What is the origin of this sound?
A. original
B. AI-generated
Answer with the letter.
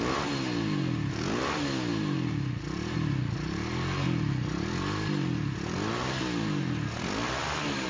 A